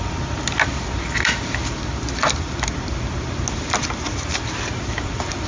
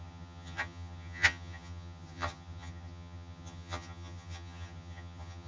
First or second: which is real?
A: first